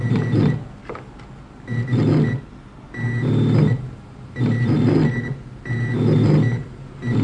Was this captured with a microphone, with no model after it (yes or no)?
yes